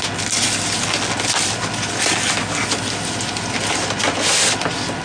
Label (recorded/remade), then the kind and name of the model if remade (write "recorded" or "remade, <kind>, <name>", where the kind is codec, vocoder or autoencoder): recorded